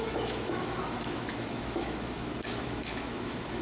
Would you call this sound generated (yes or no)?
yes